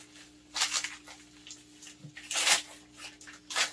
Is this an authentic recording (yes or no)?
yes